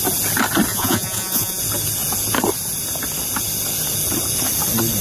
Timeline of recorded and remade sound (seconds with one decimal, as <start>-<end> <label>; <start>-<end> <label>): 0.0-0.7 recorded; 0.7-1.6 remade; 1.6-5.0 recorded